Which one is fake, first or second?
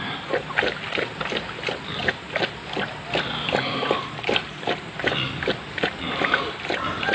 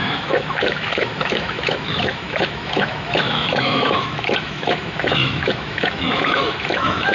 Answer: second